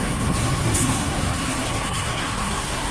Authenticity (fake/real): fake